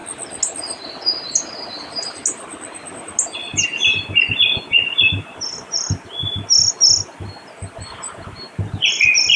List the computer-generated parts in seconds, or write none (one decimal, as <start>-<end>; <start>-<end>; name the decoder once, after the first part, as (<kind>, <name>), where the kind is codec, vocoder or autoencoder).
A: none